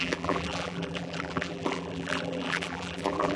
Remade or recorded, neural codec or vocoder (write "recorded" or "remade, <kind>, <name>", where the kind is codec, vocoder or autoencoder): remade, vocoder, BigVGAN v2